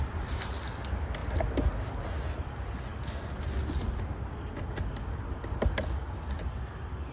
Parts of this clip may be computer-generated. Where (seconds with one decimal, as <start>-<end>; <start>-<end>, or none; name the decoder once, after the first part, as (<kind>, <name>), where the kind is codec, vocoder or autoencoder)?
none